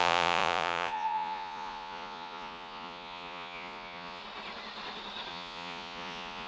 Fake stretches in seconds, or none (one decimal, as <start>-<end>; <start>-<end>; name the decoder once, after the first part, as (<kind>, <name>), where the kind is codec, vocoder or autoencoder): 0.0-4.2 (vocoder, Vocos); 5.3-6.5